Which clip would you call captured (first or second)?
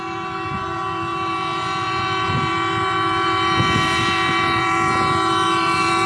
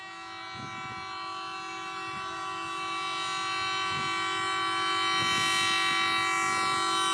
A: second